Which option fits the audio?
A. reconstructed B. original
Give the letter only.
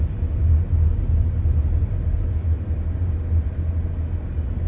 B